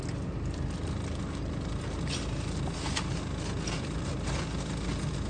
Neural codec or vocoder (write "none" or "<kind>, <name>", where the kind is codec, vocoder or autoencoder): none